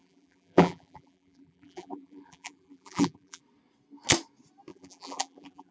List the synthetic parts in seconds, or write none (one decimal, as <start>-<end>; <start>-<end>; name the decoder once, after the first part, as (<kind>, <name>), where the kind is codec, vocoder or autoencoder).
0.0-3.4 (vocoder, BigVGAN v2); 4.7-5.7

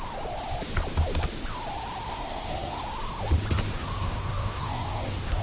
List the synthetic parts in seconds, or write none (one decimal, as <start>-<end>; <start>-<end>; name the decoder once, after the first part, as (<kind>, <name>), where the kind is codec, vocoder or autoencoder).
2.1-2.8 (codec, SNAC); 3.7-5.4

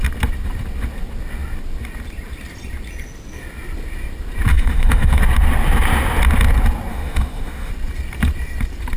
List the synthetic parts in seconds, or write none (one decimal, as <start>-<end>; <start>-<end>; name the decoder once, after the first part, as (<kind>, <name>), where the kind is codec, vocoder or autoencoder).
4.5-5.2 (autoencoder, DAC-VAE); 6.9-7.7

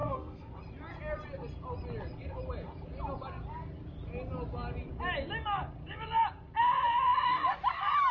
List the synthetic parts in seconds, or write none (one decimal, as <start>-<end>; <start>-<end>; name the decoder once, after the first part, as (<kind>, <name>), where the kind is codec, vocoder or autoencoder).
0.0-0.5 (codec, SNAC)

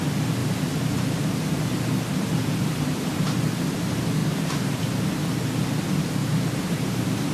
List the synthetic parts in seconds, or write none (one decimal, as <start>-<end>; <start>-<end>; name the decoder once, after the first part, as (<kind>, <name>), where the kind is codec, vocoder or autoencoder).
0.4-3.4 (vocoder, BigVGAN v2); 4.2-5.0; 6.2-7.3

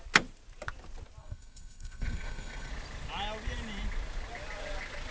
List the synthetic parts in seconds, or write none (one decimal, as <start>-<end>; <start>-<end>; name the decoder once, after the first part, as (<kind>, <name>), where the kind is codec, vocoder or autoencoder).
1.2-2.7 (codec, SNAC)

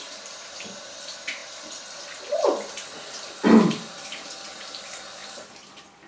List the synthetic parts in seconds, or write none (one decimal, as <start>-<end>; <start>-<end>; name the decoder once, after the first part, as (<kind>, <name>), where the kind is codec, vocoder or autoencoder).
1.4-4.5 (vocoder, BigVGAN v2); 5.2-6.1

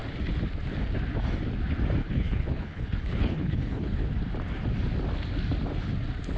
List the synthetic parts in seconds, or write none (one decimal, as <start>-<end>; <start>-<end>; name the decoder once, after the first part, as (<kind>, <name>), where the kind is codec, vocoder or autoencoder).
2.0-4.1 (codec, HILCodec)